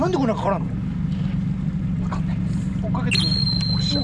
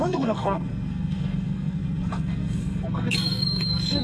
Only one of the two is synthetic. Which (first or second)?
second